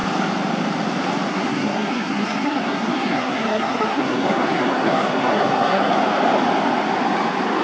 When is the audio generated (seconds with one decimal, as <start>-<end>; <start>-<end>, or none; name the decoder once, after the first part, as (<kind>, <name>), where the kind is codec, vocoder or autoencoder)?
1.3-5.9 (codec, SNAC)